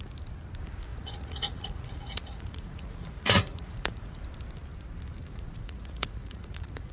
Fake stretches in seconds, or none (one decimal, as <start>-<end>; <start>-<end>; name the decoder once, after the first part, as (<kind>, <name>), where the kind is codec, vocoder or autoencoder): 0.9-4.2 (vocoder, Vocos); 5.2-6.9